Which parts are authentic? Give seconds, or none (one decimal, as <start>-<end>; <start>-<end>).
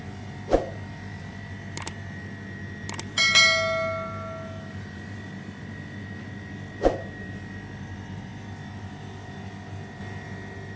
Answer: 0.0-10.8